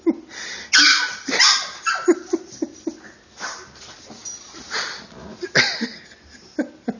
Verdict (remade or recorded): recorded